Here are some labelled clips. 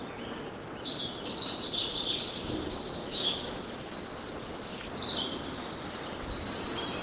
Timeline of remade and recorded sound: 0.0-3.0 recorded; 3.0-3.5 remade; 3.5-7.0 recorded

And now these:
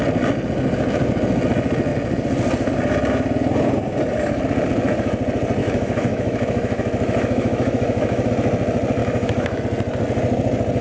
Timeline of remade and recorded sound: 0.0-5.6 recorded; 5.6-8.3 remade; 8.3-9.0 recorded; 9.0-9.6 remade; 9.6-10.8 recorded

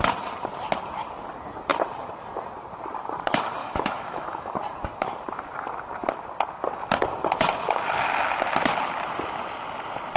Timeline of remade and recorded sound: 0.0-3.6 recorded; 3.6-4.5 remade; 4.5-10.2 recorded

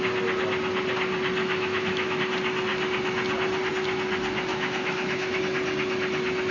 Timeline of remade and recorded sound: 0.0-1.4 recorded; 1.4-2.2 remade; 2.2-4.5 recorded; 4.5-5.4 remade; 5.4-6.5 recorded